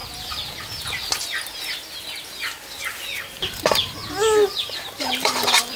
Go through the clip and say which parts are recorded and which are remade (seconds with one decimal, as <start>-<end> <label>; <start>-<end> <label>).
0.0-3.4 recorded; 3.4-4.0 remade; 4.0-5.0 recorded; 5.0-5.8 remade

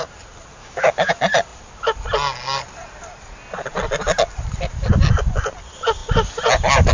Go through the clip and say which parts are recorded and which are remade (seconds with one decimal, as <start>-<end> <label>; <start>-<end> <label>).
0.0-0.6 recorded; 0.6-1.1 remade; 1.1-6.9 recorded